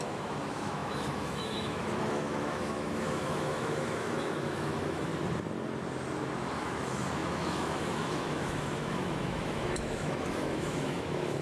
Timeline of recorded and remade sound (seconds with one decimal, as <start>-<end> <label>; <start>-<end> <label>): 0.0-5.1 remade; 5.1-6.6 recorded; 6.6-11.4 remade